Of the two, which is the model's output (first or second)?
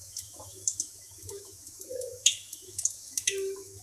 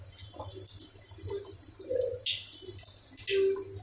first